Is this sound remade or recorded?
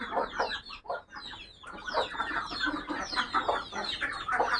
recorded